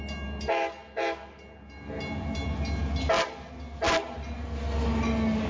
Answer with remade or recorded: recorded